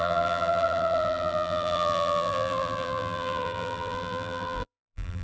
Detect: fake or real fake